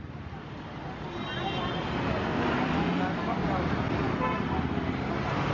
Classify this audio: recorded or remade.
recorded